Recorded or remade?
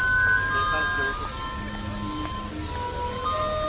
recorded